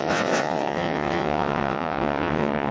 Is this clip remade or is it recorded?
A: remade